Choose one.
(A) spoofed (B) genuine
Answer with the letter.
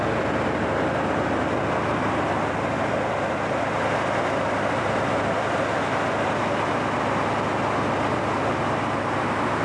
B